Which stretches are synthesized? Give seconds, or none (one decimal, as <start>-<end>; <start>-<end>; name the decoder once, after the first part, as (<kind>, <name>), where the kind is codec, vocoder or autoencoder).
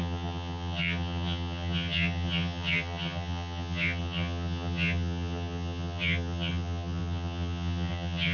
0.0-8.3 (vocoder, HiFi-GAN)